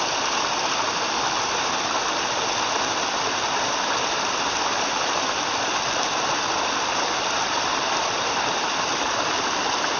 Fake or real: real